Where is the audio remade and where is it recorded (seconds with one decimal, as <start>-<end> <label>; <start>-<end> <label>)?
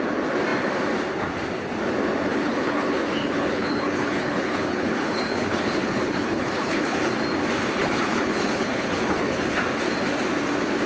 0.0-2.3 recorded; 2.3-7.1 remade; 7.1-7.8 recorded; 7.8-9.6 remade; 9.6-10.9 recorded